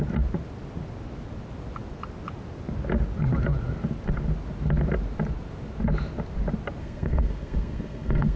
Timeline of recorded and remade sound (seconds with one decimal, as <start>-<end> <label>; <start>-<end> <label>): 0.0-6.8 recorded; 6.8-8.4 remade